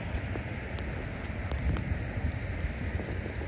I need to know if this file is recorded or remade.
recorded